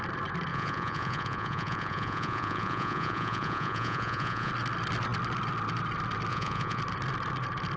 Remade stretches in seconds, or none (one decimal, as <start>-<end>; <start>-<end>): 0.5-4.5; 6.3-6.8